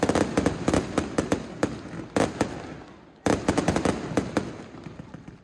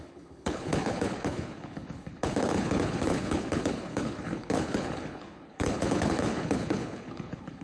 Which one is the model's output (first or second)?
second